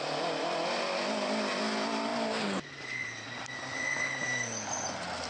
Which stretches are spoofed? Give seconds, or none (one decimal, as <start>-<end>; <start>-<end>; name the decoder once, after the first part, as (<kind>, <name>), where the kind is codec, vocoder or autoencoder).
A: none